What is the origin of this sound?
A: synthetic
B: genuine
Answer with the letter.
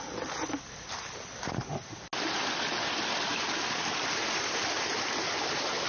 B